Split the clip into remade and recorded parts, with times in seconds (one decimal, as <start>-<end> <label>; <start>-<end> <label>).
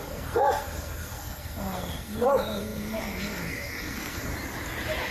0.0-4.3 remade; 4.3-5.1 recorded